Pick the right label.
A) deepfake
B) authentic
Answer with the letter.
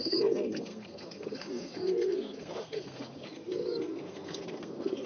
A